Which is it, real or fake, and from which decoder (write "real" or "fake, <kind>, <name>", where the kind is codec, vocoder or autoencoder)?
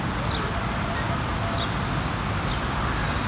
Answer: real